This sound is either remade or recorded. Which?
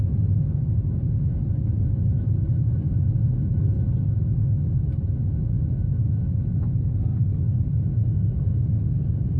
recorded